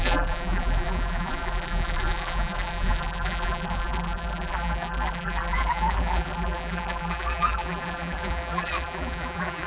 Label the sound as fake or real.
fake